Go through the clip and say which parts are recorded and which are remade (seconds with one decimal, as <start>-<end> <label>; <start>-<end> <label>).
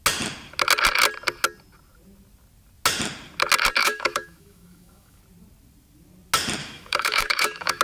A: 0.0-3.8 recorded; 3.8-5.2 remade; 5.2-6.6 recorded; 6.6-7.8 remade